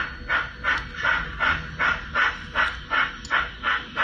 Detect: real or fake real